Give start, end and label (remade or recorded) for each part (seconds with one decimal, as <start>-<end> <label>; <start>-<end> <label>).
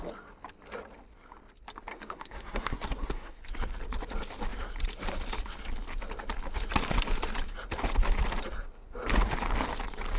0.0-1.9 recorded; 1.9-3.4 remade; 3.4-10.2 recorded